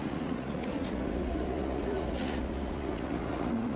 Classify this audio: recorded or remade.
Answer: remade